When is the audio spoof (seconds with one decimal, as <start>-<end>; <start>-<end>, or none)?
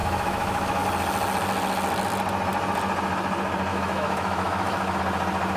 0.0-0.8; 3.7-5.0